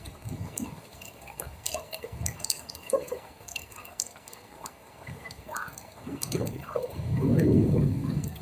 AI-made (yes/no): yes